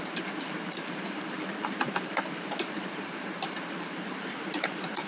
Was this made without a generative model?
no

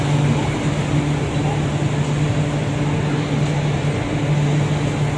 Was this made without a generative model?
yes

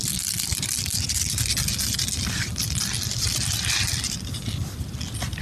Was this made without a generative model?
no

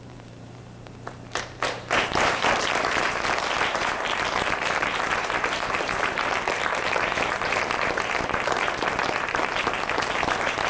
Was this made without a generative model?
no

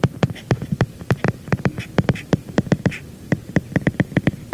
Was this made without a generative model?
no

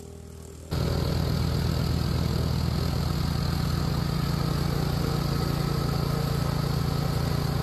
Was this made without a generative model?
yes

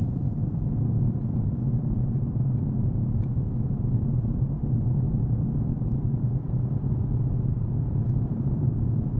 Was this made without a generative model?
no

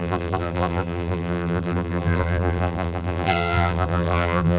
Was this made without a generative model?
no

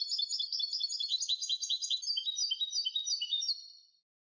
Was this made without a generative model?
yes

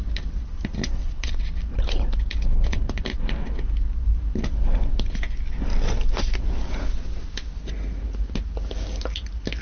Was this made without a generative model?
yes